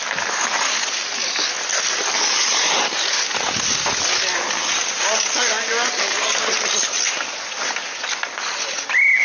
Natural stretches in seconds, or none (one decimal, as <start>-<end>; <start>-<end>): 0.0-9.2